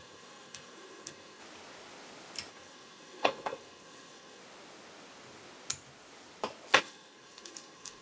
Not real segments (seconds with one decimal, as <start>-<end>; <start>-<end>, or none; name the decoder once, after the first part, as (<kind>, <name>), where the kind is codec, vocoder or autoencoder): 0.0-1.4 (codec, SNAC); 2.5-4.4; 6.8-8.0